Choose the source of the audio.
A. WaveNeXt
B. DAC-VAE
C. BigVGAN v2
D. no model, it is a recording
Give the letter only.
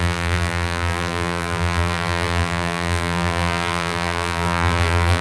C